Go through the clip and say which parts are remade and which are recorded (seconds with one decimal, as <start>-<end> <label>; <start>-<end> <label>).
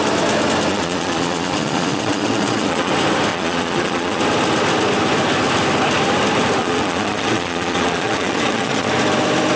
0.0-0.7 recorded; 0.7-2.9 remade; 2.9-3.3 recorded; 3.3-4.2 remade; 4.2-6.6 recorded; 6.6-8.9 remade; 8.9-9.6 recorded